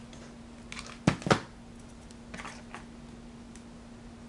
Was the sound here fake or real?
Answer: real